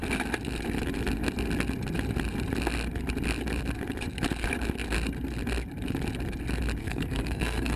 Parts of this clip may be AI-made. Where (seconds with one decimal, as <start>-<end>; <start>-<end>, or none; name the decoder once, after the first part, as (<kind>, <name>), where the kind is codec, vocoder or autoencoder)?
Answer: 6.8-7.8 (codec, SNAC)